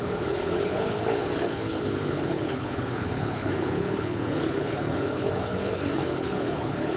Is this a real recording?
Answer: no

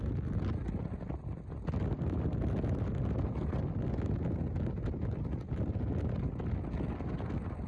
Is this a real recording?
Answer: yes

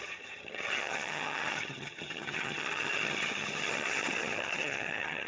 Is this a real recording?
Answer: no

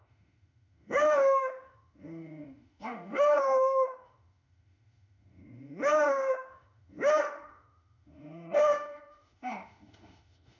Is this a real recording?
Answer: no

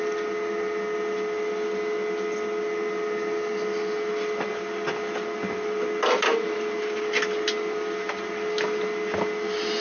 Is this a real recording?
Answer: yes